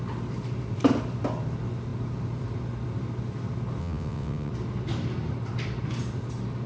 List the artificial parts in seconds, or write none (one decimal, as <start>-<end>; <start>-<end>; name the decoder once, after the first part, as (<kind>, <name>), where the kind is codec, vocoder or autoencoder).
3.8-4.5 (vocoder, WaveNeXt)

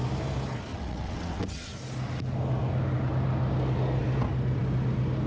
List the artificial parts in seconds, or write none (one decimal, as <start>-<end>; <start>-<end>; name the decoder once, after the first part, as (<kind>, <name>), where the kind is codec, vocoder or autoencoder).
0.7-1.7 (vocoder, WaveNeXt)

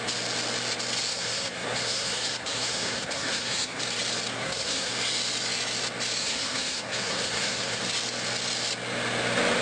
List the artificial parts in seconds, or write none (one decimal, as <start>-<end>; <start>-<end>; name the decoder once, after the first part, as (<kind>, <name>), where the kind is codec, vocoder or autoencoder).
1.1-3.8 (codec, SNAC); 4.3-4.9; 6.2-7.8

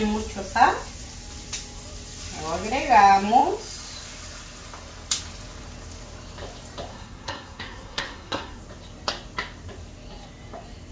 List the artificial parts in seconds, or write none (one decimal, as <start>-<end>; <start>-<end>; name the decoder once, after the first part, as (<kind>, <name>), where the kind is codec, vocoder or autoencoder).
6.9-8.6 (codec, SNAC)

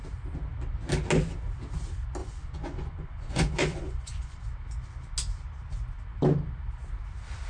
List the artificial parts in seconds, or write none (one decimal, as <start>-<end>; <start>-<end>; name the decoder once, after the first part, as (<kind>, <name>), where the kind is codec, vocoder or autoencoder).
2.2-4.4 (vocoder, Vocos)

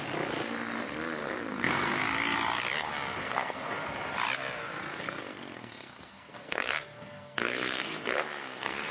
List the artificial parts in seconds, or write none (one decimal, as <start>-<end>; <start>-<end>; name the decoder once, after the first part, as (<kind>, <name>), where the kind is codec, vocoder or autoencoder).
1.2-2.0 (codec, SNAC); 3.2-3.7; 4.9-8.9

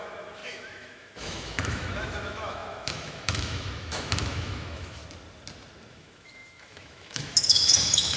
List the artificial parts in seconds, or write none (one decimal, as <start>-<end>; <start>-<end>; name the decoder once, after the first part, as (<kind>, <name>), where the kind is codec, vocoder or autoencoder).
0.0-5.0 (autoencoder, DAC-VAE); 5.9-8.2

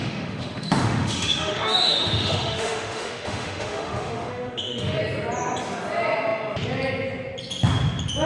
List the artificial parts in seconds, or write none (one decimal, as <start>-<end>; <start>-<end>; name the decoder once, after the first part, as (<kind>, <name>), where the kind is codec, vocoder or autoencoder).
0.0-5.0 (autoencoder, DAC-VAE)